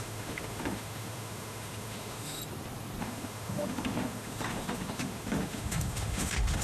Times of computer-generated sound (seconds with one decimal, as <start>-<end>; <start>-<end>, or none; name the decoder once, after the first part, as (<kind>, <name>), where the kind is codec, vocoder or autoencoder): 0.0-2.4 (autoencoder, DAC-VAE); 3.0-6.6

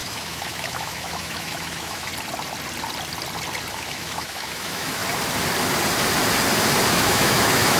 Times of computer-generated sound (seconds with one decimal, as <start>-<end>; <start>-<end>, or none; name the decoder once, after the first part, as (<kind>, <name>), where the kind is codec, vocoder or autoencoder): 0.0-2.1 (autoencoder, DAC-VAE); 3.7-5.0; 6.9-7.8

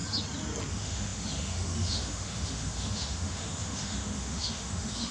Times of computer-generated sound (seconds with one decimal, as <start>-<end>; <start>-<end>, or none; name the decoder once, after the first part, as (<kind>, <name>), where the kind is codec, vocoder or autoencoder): 0.7-5.1 (autoencoder, DAC-VAE)

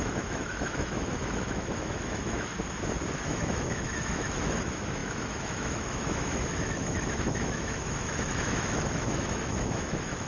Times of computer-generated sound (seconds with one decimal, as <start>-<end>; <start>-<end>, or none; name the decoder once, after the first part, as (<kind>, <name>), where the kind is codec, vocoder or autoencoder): 0.0-2.5 (autoencoder, DAC-VAE); 3.1-10.3